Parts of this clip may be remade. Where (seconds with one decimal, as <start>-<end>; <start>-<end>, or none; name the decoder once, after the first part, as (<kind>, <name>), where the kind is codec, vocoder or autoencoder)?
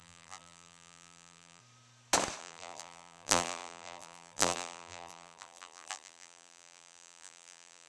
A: 0.0-1.6 (vocoder, BigVGAN v2); 2.4-7.9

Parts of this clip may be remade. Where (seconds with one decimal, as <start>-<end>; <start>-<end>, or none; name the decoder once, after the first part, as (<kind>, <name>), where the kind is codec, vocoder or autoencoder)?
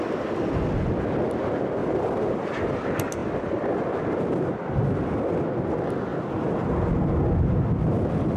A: 1.8-2.7 (vocoder, BigVGAN v2); 6.1-6.9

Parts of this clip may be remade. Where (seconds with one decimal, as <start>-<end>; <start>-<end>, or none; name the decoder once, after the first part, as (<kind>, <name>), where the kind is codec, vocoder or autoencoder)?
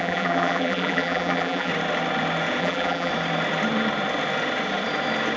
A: 0.0-1.7 (vocoder, BigVGAN v2); 2.6-3.1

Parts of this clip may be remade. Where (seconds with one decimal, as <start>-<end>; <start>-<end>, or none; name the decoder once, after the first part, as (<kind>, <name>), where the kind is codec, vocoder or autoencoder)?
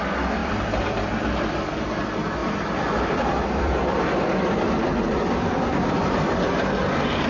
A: 0.4-2.0 (vocoder, BigVGAN v2); 2.4-6.5